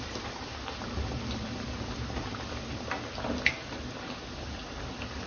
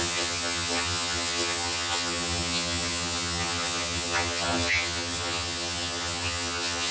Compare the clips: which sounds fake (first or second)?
second